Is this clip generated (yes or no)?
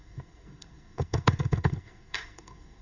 yes